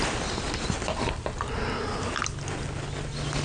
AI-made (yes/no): no